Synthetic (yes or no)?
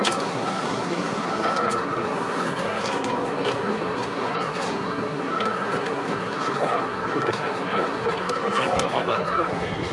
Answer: yes